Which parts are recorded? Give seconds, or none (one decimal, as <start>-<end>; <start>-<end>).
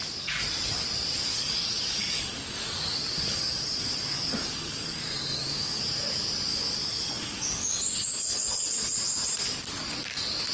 0.0-1.3; 5.8-6.5; 8.7-10.5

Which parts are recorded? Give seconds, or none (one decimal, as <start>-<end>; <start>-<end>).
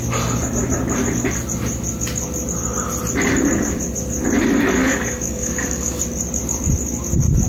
0.0-4.8; 6.0-7.5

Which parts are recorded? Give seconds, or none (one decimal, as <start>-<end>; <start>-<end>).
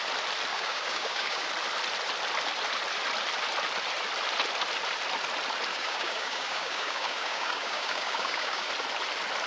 0.0-0.5; 1.5-5.7; 8.7-9.5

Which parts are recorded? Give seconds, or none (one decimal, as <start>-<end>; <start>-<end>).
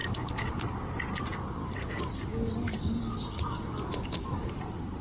0.6-1.6; 4.6-5.0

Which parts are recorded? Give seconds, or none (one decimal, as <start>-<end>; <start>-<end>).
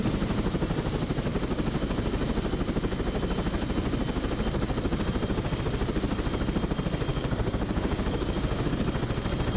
0.0-7.1; 8.7-9.6